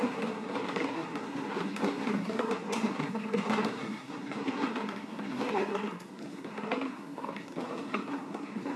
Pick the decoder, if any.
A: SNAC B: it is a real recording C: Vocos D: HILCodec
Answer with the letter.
A